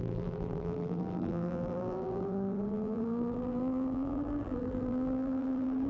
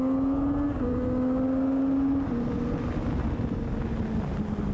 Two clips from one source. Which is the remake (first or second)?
first